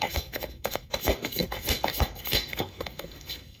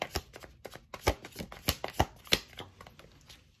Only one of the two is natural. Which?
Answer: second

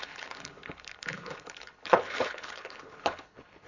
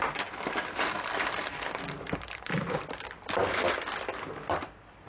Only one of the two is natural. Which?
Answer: second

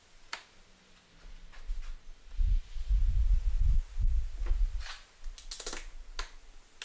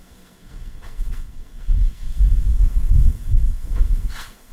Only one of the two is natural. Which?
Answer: first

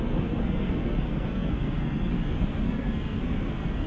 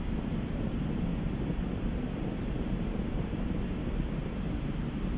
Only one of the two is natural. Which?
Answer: second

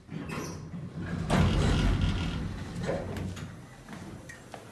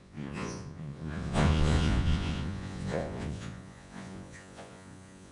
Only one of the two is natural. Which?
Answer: first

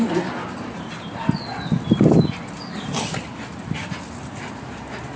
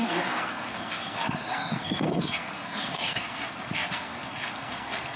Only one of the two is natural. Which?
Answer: first